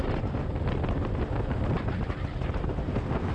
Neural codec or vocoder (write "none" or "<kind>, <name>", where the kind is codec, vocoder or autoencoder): none